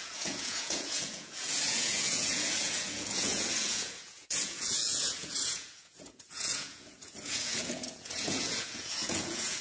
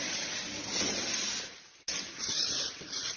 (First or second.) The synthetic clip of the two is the first